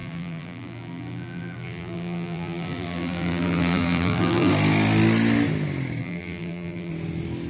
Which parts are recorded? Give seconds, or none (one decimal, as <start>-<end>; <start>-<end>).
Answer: 4.5-6.0; 6.9-7.5